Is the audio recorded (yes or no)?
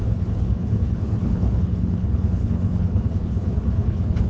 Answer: no